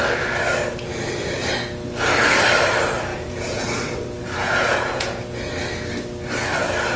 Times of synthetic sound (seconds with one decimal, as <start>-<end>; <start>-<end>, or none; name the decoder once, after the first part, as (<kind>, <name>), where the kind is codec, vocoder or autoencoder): 3.1-3.6 (vocoder, Vocos); 4.2-5.2